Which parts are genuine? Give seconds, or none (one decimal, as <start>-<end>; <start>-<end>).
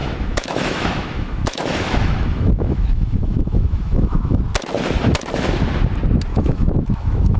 4.4-6.3